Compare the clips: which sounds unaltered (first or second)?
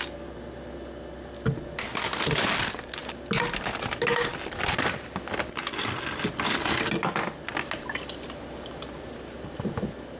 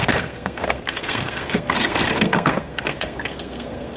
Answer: first